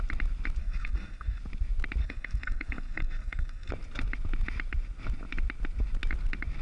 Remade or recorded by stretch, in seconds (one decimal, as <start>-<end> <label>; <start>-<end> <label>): 0.0-0.6 recorded; 0.6-1.4 remade; 1.4-2.0 recorded; 2.0-3.7 remade; 3.7-6.6 recorded